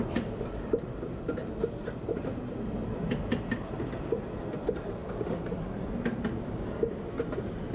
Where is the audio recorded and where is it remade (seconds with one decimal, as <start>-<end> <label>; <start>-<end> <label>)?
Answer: 0.0-7.7 recorded